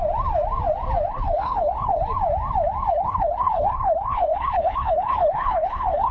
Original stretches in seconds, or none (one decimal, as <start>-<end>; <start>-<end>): 0.0-1.1; 2.0-2.9